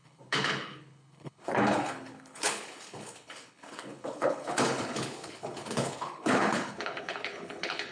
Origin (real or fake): fake